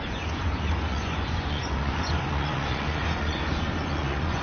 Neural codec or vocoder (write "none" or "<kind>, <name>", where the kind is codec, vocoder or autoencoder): vocoder, Vocos